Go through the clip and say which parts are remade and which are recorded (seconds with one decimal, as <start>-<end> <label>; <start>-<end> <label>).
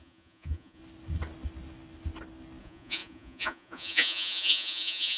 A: 0.0-0.8 remade; 0.8-2.6 recorded; 2.6-5.2 remade